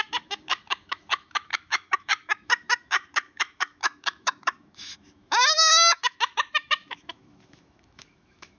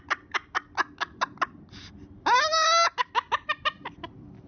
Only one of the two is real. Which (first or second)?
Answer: second